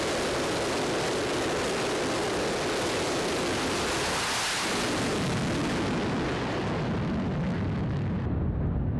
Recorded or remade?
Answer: recorded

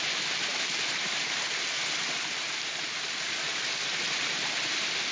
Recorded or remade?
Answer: recorded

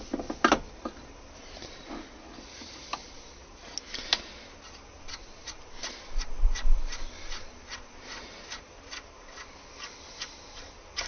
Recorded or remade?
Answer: recorded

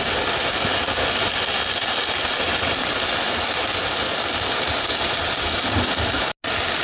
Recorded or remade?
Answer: recorded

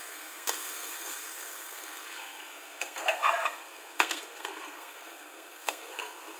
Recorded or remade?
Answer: remade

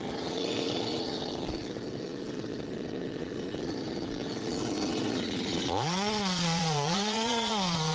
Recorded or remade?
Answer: remade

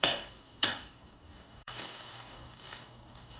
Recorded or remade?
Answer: remade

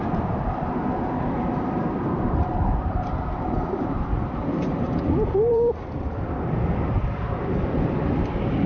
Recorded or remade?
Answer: remade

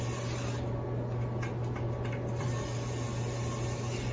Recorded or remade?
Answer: recorded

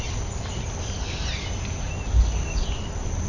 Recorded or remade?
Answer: recorded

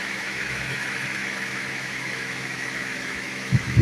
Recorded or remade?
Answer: remade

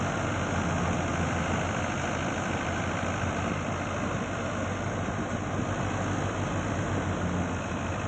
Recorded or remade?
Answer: recorded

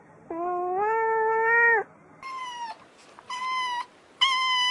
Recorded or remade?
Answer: recorded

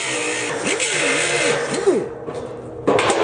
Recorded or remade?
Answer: recorded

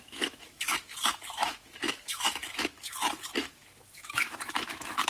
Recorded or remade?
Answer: remade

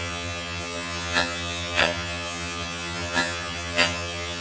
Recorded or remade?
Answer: remade